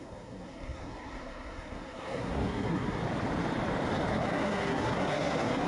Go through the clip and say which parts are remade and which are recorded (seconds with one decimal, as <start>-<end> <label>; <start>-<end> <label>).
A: 0.0-3.0 remade; 3.0-4.1 recorded; 4.1-5.7 remade